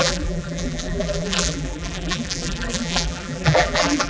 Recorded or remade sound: remade